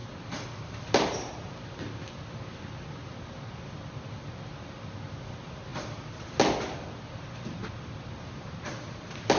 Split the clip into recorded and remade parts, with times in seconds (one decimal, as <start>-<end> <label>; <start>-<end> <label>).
0.0-9.4 recorded